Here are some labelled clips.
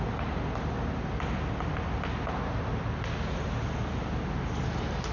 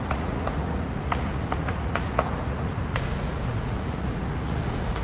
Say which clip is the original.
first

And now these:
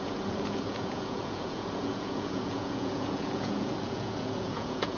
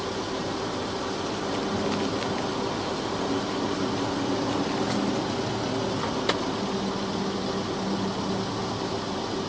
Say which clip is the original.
second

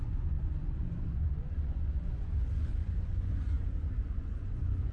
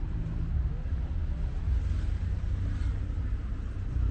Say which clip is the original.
second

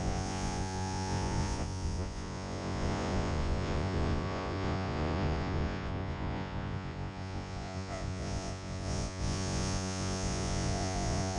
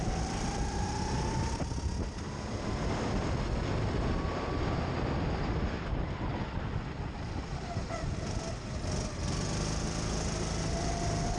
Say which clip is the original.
second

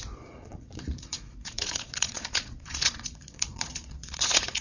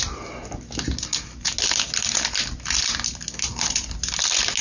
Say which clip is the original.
second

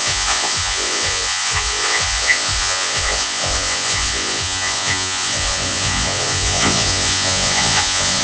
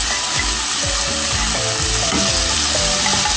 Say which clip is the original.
second